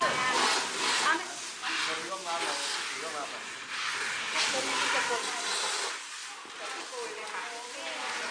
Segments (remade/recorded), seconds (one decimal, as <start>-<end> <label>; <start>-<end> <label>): 0.0-8.3 recorded